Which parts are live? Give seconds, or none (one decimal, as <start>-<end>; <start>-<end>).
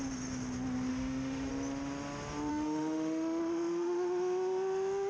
0.0-0.9; 1.5-2.5